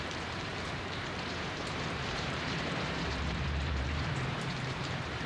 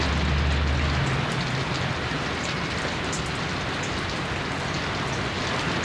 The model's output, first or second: first